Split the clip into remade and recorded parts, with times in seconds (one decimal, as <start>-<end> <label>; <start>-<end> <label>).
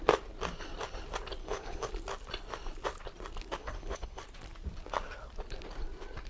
0.0-1.4 recorded; 1.4-1.9 remade; 1.9-3.6 recorded; 3.6-4.2 remade; 4.2-6.3 recorded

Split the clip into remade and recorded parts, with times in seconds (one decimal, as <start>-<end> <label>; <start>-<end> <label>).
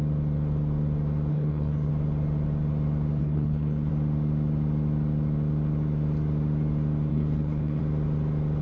0.0-1.3 recorded; 1.3-1.9 remade; 1.9-3.2 recorded; 3.2-3.9 remade; 3.9-7.1 recorded; 7.1-7.8 remade; 7.8-8.6 recorded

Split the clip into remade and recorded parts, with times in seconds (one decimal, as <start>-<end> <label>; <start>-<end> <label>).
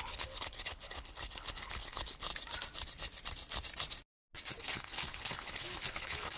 0.0-2.3 remade; 2.3-4.6 recorded; 4.6-6.4 remade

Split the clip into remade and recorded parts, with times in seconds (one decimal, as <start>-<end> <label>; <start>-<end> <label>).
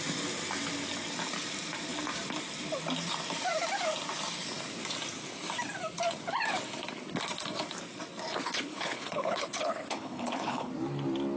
0.0-8.4 recorded; 8.4-10.7 remade; 10.7-11.4 recorded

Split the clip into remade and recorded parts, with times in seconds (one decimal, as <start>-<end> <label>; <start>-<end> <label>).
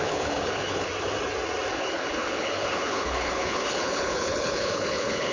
0.0-0.9 remade; 0.9-1.7 recorded; 1.7-5.3 remade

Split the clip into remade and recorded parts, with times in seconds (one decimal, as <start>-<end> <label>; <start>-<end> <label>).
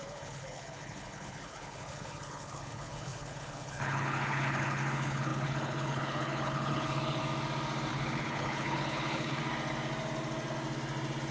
0.0-7.2 remade; 7.2-7.9 recorded; 7.9-9.4 remade; 9.4-11.3 recorded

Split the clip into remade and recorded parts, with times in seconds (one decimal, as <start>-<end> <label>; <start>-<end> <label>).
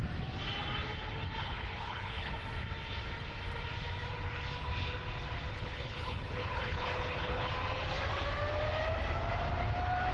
0.0-1.4 recorded; 1.4-2.3 remade; 2.3-5.5 recorded; 5.5-7.5 remade; 7.5-10.1 recorded